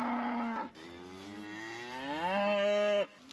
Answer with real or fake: real